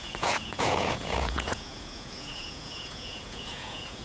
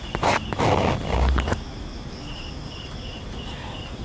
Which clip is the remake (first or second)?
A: first